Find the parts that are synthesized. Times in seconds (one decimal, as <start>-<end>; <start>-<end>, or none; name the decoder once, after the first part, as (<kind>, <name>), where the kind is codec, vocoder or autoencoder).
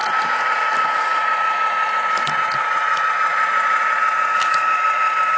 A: 0.0-2.2 (vocoder, BigVGAN v2); 3.3-4.0